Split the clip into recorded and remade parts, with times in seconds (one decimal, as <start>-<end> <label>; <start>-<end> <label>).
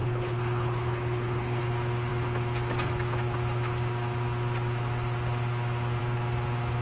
0.0-1.6 remade; 1.6-6.8 recorded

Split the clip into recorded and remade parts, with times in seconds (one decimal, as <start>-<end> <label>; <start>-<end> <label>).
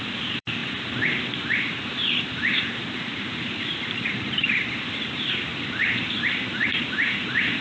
0.0-7.6 remade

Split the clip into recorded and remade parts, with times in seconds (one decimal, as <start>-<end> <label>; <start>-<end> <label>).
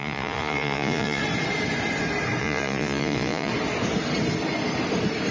0.0-1.2 remade; 1.2-2.4 recorded; 2.4-3.5 remade; 3.5-5.3 recorded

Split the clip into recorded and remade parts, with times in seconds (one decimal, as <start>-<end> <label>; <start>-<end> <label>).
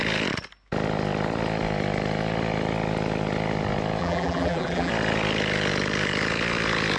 0.0-4.0 recorded; 4.0-4.9 remade; 4.9-7.0 recorded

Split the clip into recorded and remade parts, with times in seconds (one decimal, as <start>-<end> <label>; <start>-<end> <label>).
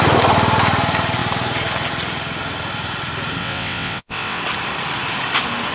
0.0-3.4 recorded; 3.4-4.4 remade; 4.4-5.7 recorded